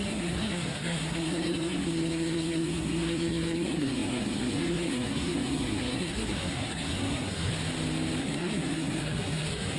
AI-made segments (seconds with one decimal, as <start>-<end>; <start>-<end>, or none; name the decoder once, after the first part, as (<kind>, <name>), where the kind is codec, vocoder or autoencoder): 0.0-7.5 (codec, SNAC); 8.2-9.8